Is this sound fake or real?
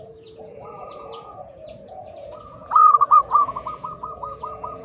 fake